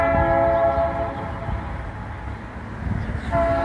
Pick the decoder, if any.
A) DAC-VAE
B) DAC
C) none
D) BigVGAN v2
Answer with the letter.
C